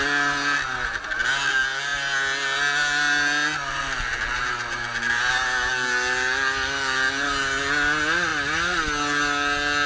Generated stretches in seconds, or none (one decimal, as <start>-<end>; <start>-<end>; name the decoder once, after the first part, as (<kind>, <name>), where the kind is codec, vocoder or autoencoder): none